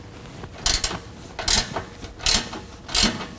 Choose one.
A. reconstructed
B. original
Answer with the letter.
B